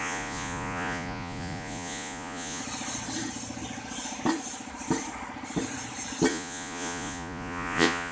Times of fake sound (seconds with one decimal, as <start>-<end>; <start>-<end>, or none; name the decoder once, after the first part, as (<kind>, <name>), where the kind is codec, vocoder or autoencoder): 0.0-2.6 (vocoder, Vocos); 6.3-8.1